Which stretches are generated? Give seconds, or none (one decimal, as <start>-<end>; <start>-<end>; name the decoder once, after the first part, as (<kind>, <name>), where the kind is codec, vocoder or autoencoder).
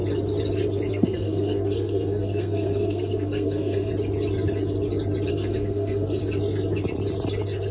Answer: 0.9-3.9 (codec, SNAC); 5.3-6.2